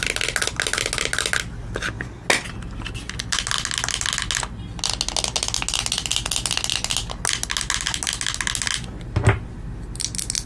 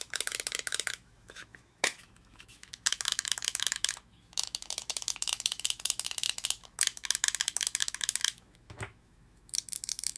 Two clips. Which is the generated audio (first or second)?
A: second